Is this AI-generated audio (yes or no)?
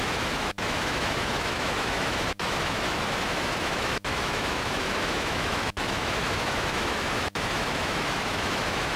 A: yes